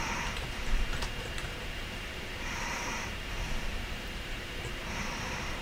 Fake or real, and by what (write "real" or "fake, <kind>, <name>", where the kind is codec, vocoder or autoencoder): fake, vocoder, BigVGAN v2